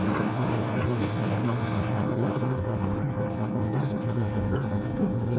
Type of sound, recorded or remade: remade